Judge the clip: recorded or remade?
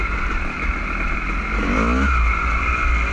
recorded